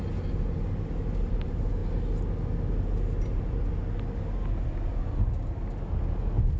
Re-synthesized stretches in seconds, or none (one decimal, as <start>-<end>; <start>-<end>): none